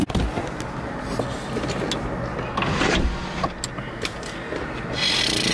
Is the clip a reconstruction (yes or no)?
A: no